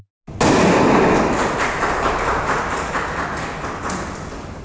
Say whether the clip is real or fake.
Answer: real